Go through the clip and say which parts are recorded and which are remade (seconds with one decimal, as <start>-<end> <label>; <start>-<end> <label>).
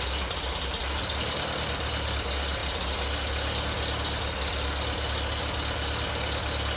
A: 0.0-6.8 recorded